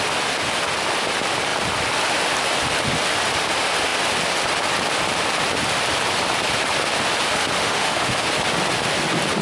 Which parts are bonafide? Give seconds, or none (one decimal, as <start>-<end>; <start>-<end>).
0.0-7.6; 8.3-9.4